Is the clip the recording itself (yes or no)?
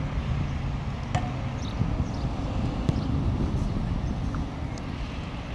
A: yes